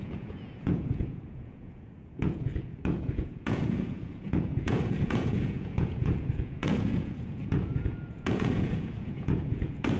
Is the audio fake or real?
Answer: fake